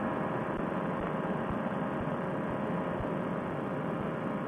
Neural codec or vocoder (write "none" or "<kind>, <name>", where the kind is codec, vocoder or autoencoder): none